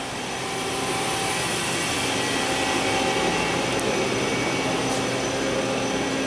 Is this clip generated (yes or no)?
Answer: no